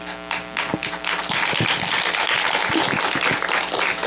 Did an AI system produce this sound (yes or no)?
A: no